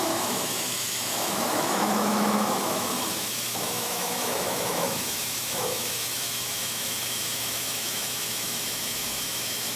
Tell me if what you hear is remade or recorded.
remade